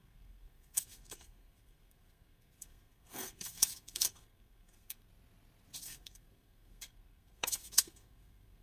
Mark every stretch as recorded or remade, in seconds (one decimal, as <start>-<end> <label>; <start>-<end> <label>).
0.0-5.1 remade; 5.1-5.8 recorded; 5.8-8.6 remade